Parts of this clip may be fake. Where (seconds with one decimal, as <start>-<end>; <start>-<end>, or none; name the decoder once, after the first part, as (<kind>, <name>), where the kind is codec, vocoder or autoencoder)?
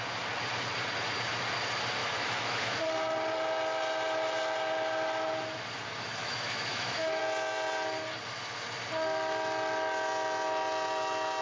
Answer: 2.0-2.8 (autoencoder, DAC-VAE); 6.2-7.2